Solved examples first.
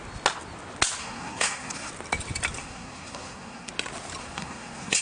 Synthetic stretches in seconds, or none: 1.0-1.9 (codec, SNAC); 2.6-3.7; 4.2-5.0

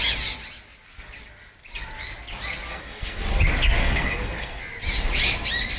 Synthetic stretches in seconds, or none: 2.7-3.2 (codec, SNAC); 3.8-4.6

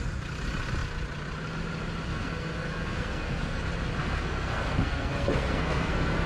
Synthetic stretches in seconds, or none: 2.1-3.6 (codec, SNAC); 4.0-6.3

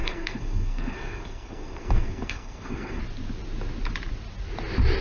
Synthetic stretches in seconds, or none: 0.0-3.0 (codec, SNAC)

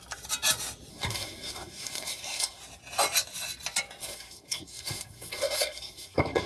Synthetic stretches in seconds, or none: 0.9-2.6 (codec, SNAC); 4.0-6.5

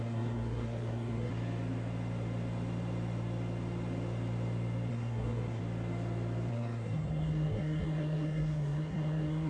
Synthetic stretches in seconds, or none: 0.0-1.3 (codec, SNAC); 4.9-5.6; 6.5-9.5